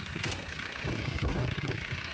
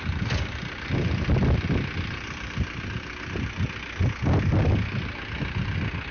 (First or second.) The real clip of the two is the second